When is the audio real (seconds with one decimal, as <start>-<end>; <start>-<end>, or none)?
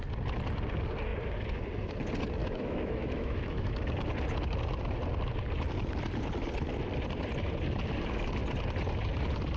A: 0.0-2.4; 3.7-9.6